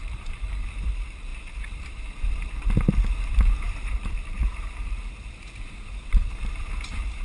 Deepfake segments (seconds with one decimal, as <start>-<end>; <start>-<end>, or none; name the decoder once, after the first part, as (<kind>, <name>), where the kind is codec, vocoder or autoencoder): 0.0-7.2 (vocoder, BigVGAN v2)